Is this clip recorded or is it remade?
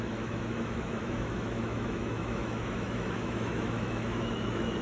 remade